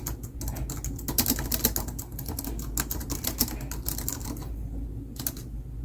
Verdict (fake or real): real